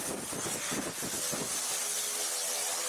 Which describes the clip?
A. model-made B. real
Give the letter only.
B